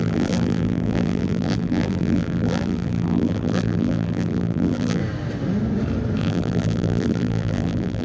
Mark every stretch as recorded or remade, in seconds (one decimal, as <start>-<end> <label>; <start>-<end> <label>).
0.0-5.0 remade; 5.0-6.2 recorded; 6.2-8.0 remade